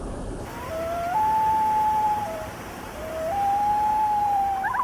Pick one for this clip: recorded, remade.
remade